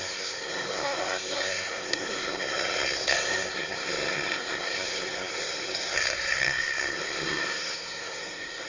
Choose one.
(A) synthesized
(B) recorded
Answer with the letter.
A